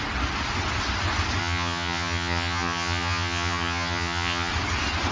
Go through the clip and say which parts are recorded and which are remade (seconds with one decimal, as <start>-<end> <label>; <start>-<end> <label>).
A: 0.0-1.4 recorded; 1.4-4.5 remade; 4.5-5.1 recorded